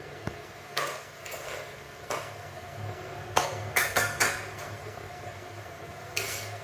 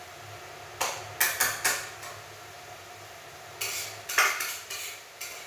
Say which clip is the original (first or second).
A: second